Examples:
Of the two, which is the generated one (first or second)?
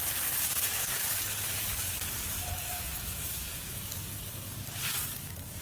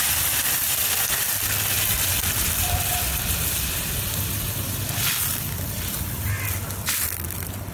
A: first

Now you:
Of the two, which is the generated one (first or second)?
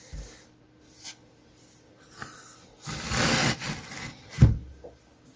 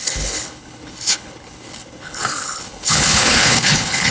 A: second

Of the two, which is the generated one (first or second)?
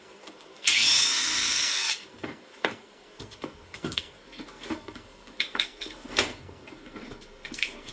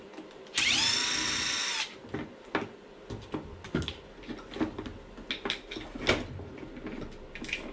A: first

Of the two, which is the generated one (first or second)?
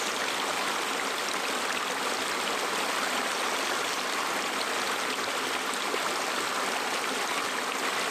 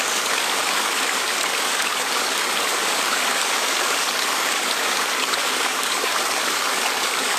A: second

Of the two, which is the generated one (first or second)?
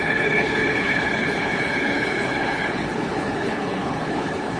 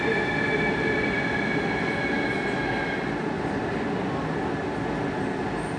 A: first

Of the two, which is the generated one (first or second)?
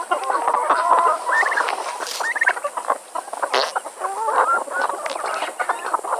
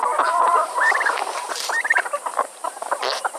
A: second